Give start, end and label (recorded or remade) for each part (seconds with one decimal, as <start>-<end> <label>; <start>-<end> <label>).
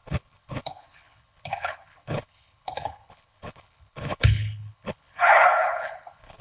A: 0.0-6.4 remade